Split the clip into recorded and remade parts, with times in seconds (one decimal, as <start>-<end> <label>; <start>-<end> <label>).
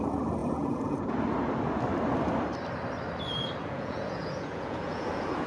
0.0-0.4 recorded; 0.4-1.2 remade; 1.2-3.6 recorded; 3.6-5.5 remade